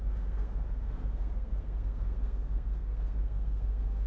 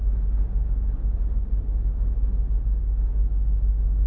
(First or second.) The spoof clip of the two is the first